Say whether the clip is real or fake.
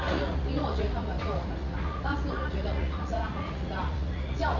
fake